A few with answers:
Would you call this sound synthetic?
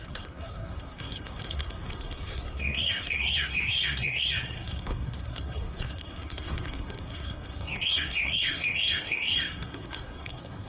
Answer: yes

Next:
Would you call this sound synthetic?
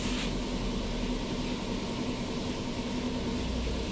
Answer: no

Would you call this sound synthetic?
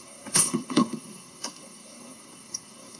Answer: yes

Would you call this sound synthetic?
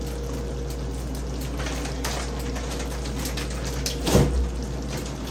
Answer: no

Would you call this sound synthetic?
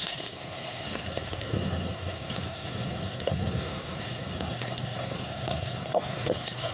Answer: yes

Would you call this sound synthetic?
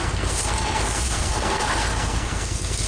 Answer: yes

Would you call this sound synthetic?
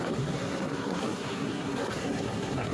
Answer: yes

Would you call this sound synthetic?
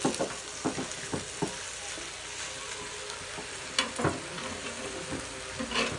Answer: no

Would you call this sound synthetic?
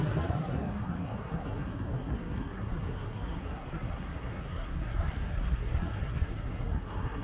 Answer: yes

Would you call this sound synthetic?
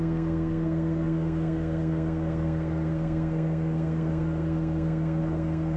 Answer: yes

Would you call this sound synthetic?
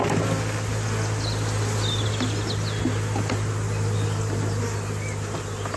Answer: no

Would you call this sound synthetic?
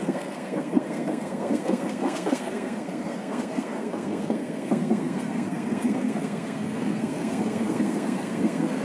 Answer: yes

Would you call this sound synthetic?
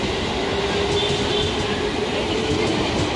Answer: no